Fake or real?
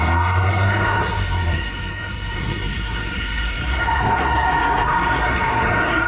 fake